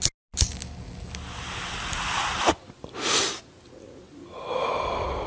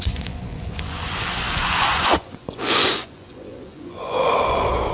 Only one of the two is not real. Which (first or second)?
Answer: second